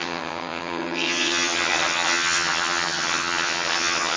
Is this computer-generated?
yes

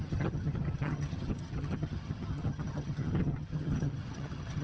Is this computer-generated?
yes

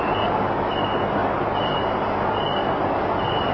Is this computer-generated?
no